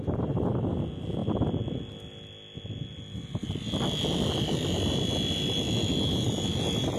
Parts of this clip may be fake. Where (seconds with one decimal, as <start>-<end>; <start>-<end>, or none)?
none